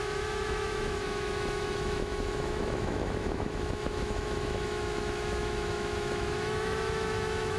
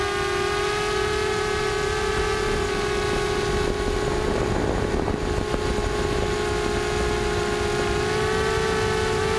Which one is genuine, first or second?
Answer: second